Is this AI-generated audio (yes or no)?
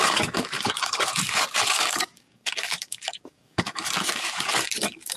yes